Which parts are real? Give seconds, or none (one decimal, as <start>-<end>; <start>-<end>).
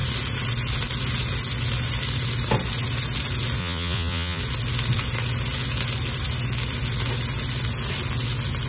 0.0-3.6; 4.4-8.7